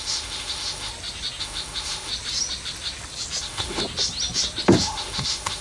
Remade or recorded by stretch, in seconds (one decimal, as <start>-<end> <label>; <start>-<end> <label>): 0.0-0.9 remade; 0.9-1.4 recorded; 1.4-2.1 remade; 2.1-3.4 recorded; 3.4-3.8 remade; 3.8-4.8 recorded; 4.8-5.6 remade